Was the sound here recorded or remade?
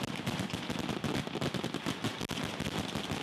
recorded